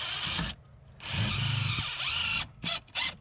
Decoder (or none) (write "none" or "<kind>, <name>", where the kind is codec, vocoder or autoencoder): none